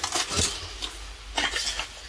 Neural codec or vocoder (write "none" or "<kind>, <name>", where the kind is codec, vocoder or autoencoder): none